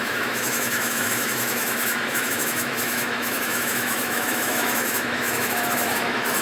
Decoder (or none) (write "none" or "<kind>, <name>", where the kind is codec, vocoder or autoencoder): autoencoder, DAC-VAE